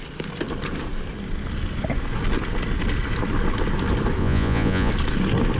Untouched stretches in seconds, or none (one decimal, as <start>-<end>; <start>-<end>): 0.0-4.2; 4.9-5.6